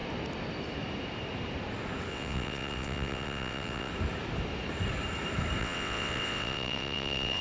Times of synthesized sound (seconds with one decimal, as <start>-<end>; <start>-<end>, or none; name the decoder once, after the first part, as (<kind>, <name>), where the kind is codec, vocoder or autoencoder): 2.1-3.9 (vocoder, WaveNeXt); 5.6-7.4